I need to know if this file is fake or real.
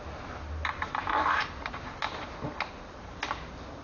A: real